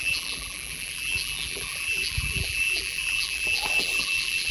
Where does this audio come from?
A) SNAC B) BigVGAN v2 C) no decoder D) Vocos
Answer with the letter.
B